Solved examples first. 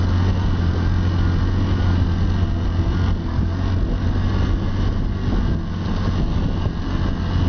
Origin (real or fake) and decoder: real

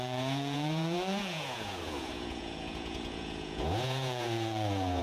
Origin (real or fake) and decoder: fake, vocoder, Vocos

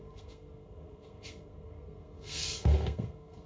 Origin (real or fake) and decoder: fake, codec, SNAC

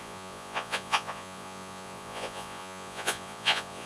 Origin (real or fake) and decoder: fake, vocoder, Vocos